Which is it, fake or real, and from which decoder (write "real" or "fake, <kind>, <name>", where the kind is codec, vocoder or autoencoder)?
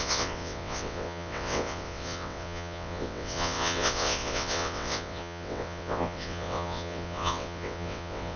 fake, vocoder, WaveNeXt